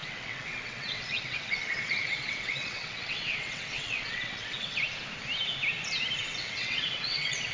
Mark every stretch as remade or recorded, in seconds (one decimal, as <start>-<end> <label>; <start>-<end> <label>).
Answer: 0.0-4.8 remade; 4.8-6.2 recorded; 6.2-7.5 remade